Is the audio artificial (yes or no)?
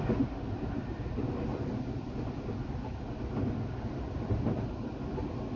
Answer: no